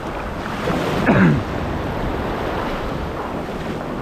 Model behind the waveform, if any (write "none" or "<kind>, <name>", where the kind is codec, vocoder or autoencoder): none